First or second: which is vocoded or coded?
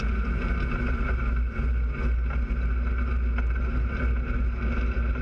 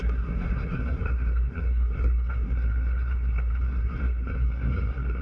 second